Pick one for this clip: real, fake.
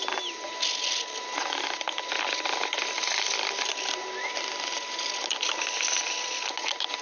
real